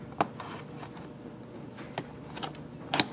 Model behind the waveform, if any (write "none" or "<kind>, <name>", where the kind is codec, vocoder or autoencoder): none